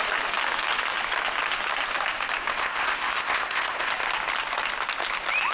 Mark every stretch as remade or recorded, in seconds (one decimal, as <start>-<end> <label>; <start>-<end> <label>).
0.0-2.5 recorded; 2.5-3.9 remade; 3.9-5.5 recorded